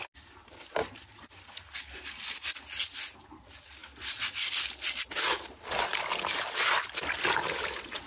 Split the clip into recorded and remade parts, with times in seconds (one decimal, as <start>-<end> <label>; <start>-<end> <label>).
0.0-8.1 recorded